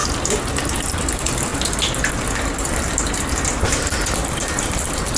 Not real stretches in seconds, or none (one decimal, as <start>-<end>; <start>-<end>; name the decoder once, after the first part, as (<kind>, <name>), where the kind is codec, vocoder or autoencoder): 4.2-5.2 (vocoder, BigVGAN v2)